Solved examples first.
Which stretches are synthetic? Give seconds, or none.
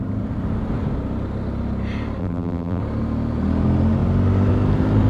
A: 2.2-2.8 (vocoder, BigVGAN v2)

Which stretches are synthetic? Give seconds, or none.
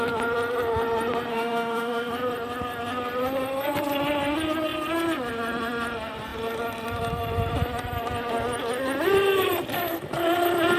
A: 1.3-2.1 (autoencoder, DAC-VAE)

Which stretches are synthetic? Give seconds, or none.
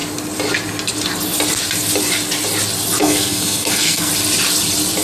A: 3.0-4.1 (codec, SNAC)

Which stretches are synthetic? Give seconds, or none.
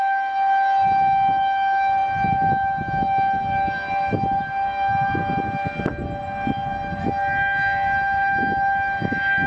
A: none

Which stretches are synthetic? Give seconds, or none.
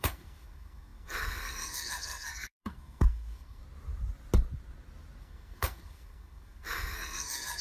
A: 0.0-3.6 (codec, SNAC); 5.2-7.6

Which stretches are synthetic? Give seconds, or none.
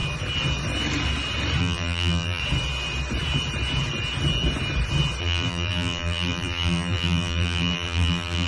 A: 1.6-2.4 (vocoder, BigVGAN v2); 5.2-8.5